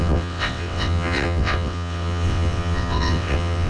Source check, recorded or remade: remade